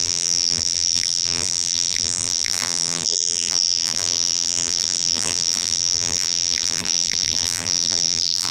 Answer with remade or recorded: remade